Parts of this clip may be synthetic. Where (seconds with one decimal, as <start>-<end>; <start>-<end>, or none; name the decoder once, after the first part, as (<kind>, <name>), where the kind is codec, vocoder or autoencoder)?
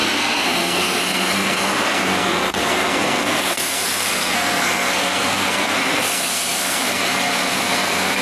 0.0-8.2 (codec, SNAC)